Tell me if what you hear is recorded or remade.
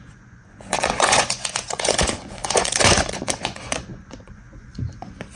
remade